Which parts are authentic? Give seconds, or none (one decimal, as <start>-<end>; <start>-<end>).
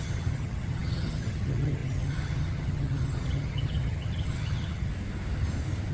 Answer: 4.9-5.9